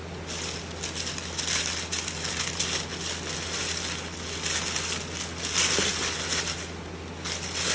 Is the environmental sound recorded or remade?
recorded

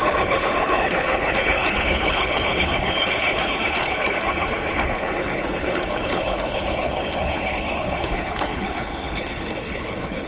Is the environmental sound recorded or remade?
remade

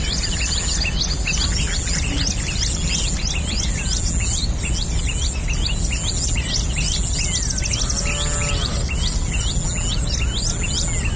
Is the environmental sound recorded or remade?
recorded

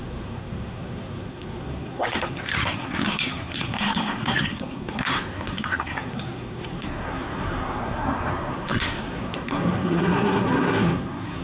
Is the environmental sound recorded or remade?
remade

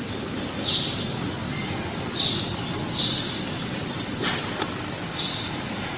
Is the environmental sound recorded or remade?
recorded